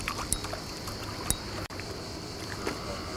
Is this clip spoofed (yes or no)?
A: yes